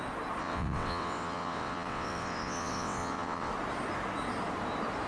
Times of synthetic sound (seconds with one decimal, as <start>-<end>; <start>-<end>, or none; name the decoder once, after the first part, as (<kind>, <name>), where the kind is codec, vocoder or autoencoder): 0.4-3.5 (vocoder, WaveNeXt)